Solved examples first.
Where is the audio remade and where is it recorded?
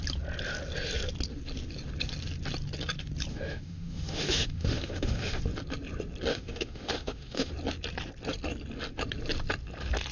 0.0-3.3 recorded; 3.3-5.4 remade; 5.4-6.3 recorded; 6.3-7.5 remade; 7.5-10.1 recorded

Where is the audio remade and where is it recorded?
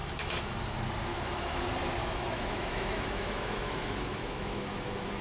0.0-0.6 remade; 0.6-1.1 recorded; 1.1-1.6 remade; 1.6-2.0 recorded; 2.0-5.2 remade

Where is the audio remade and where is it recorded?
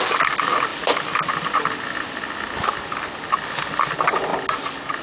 0.0-5.0 recorded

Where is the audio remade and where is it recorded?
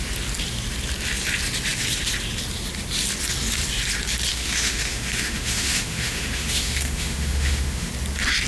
0.0-4.3 recorded; 4.3-7.9 remade; 7.9-8.5 recorded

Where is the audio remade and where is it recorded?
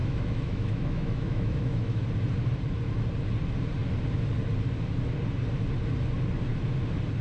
0.0-2.0 remade; 2.0-7.2 recorded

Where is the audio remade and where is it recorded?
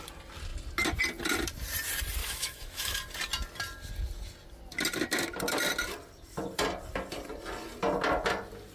0.0-2.2 recorded; 2.2-3.0 remade; 3.0-8.7 recorded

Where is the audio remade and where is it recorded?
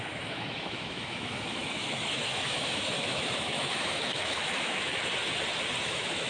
0.0-4.9 remade; 4.9-5.8 recorded; 5.8-6.3 remade